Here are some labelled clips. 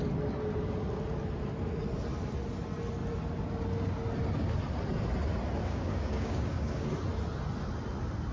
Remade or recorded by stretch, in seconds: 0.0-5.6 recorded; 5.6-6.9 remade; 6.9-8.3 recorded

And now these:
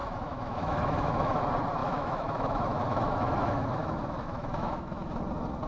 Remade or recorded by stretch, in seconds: 0.0-1.4 remade; 1.4-1.8 recorded; 1.8-5.2 remade; 5.2-5.7 recorded

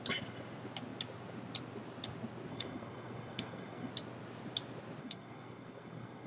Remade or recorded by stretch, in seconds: 0.0-2.5 recorded; 2.5-3.9 remade; 3.9-5.0 recorded; 5.0-6.3 remade

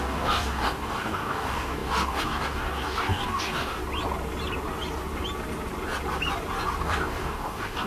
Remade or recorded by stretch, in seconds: 0.0-3.8 remade; 3.8-6.8 recorded; 6.8-7.9 remade